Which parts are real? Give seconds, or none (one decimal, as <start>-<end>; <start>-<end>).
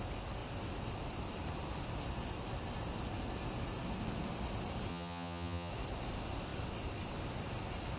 0.0-4.9; 5.7-8.0